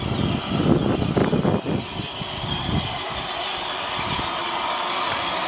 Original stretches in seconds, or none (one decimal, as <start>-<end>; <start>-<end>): 0.0-1.2; 4.5-5.5